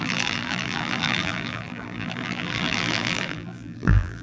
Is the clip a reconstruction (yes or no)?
yes